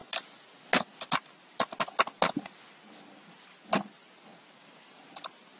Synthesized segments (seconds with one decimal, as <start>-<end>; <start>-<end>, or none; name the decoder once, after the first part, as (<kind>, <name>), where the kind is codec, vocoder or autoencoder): none